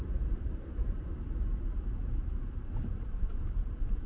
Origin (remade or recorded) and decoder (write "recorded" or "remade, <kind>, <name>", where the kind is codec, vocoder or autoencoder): remade, vocoder, BigVGAN v2